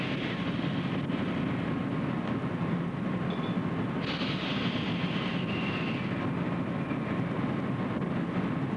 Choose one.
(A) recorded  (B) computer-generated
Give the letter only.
A